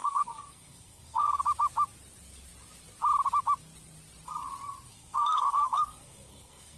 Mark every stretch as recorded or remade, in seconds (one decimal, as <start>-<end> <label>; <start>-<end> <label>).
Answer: 0.0-1.4 remade; 1.4-4.9 recorded; 4.9-6.8 remade

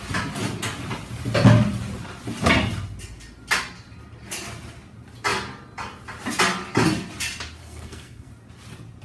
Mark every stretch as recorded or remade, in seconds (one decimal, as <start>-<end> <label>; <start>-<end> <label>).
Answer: 0.0-7.6 recorded; 7.6-8.3 remade; 8.3-9.0 recorded

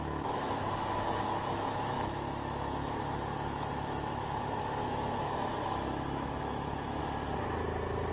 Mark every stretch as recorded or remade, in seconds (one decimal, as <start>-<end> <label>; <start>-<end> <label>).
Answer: 0.0-7.0 remade; 7.0-8.1 recorded